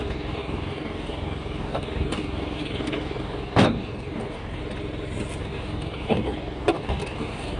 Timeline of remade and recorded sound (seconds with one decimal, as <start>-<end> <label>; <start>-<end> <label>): 0.0-4.6 remade; 4.6-5.4 recorded; 5.4-7.6 remade